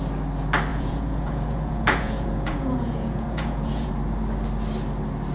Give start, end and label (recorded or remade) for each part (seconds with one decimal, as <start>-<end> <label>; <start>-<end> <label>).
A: 0.0-0.7 recorded; 0.7-3.9 remade; 3.9-5.3 recorded

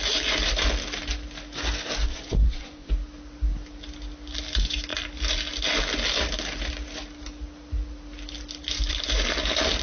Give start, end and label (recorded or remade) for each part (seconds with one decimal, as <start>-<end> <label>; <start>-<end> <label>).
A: 0.0-2.0 recorded; 2.0-2.9 remade; 2.9-9.8 recorded

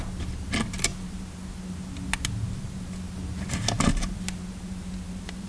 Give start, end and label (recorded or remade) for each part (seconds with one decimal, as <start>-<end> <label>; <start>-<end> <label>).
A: 0.0-5.5 recorded

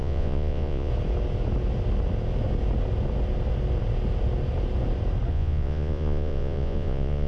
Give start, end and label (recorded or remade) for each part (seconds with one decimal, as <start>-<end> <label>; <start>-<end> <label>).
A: 0.0-0.9 remade; 0.9-5.3 recorded; 5.3-7.3 remade

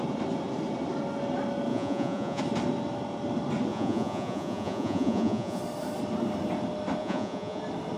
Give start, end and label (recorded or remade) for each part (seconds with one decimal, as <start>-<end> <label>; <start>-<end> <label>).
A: 0.0-1.7 recorded; 1.7-2.4 remade; 2.4-3.7 recorded; 3.7-5.6 remade; 5.6-7.0 recorded; 7.0-7.6 remade; 7.6-8.0 recorded

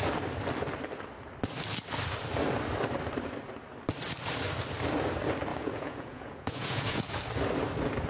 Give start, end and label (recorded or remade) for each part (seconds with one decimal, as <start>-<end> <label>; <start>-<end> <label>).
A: 0.0-5.5 recorded; 5.5-7.2 remade; 7.2-8.1 recorded

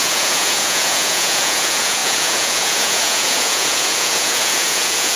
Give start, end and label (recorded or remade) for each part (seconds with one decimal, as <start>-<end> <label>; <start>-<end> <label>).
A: 0.0-5.2 remade